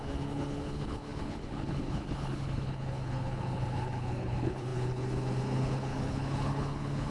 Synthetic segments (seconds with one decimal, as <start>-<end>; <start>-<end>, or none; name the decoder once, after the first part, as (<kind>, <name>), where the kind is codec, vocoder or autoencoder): 0.0-7.1 (codec, HILCodec)